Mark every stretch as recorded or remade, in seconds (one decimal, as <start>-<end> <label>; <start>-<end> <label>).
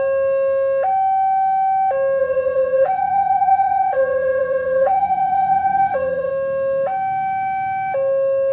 0.0-2.2 recorded; 2.2-6.3 remade; 6.3-8.5 recorded